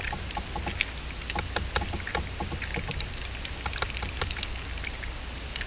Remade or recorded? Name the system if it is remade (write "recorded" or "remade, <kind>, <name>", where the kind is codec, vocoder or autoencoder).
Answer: recorded